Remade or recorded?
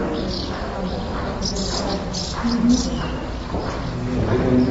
recorded